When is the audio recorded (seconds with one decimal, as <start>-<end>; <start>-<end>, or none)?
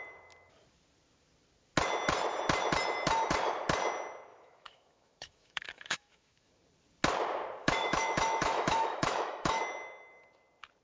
0.0-4.3; 6.5-7.6; 9.6-10.8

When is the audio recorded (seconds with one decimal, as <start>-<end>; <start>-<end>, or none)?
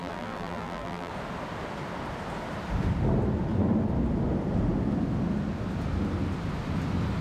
1.1-7.2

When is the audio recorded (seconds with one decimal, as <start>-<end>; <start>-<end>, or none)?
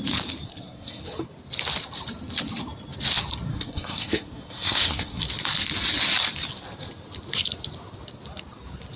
0.0-0.5; 1.0-3.5; 5.2-9.0